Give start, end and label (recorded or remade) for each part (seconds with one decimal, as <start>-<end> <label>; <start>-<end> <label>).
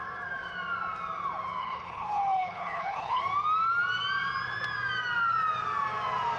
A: 0.0-1.6 recorded; 1.6-3.2 remade; 3.2-6.4 recorded